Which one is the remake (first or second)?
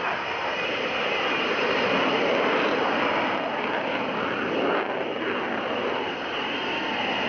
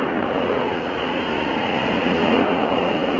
second